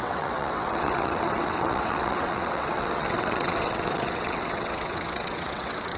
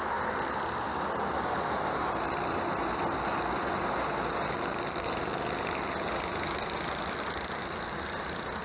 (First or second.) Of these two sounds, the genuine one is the second